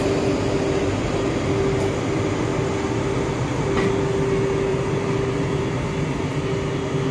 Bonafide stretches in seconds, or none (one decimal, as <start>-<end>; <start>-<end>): 0.0-4.7; 5.6-7.1